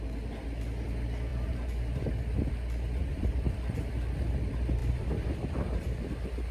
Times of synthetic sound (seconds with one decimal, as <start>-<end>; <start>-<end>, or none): 1.3-2.1; 3.1-3.9; 4.8-5.8